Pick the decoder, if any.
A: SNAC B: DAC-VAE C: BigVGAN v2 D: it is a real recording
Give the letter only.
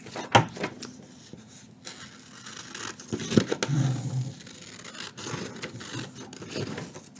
D